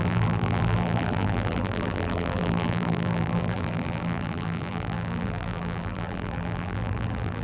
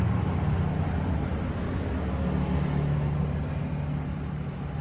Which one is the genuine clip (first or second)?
second